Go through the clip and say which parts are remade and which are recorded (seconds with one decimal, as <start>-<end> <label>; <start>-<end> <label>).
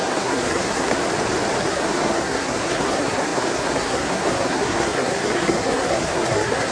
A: 0.0-1.0 remade; 1.0-1.6 recorded; 1.6-6.7 remade